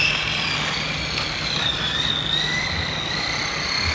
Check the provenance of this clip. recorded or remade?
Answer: recorded